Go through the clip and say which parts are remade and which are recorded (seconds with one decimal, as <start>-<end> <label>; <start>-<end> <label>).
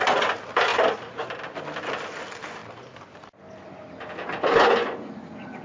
0.0-5.6 recorded